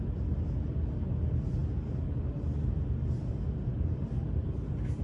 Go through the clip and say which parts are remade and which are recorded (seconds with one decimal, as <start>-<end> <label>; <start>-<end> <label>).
0.0-5.0 recorded